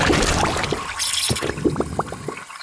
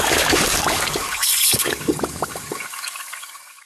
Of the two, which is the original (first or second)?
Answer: first